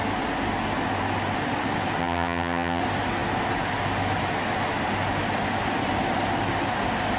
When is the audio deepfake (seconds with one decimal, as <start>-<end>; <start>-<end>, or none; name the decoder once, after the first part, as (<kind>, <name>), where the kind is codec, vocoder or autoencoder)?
2.0-2.8 (vocoder, HiFi-GAN)